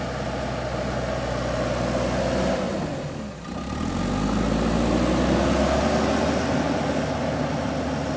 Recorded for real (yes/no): yes